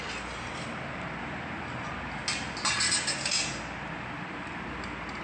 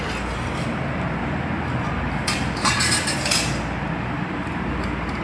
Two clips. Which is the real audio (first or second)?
first